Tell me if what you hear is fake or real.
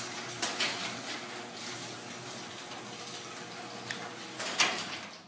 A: real